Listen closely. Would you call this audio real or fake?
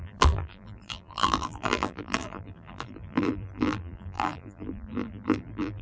fake